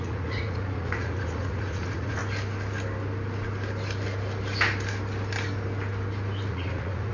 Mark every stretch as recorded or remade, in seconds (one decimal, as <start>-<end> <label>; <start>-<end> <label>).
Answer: 0.0-2.2 remade; 2.2-6.5 recorded; 6.5-7.1 remade